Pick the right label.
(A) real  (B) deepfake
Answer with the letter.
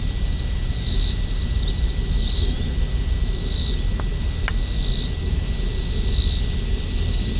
A